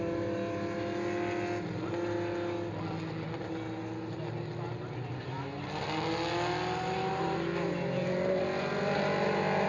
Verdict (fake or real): real